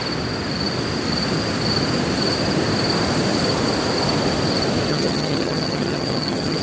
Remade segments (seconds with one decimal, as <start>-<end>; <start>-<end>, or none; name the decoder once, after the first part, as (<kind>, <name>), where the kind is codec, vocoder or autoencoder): 4.9-6.6 (vocoder, HiFi-GAN)